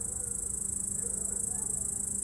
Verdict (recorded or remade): recorded